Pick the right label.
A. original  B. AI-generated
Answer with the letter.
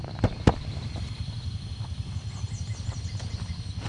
A